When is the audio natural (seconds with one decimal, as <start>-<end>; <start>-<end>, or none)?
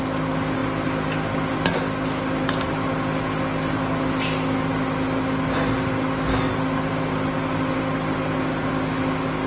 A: 0.0-9.5